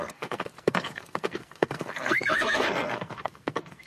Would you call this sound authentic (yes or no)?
no